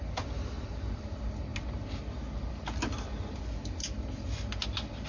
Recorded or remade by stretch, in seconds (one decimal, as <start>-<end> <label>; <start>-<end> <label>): 0.0-5.1 recorded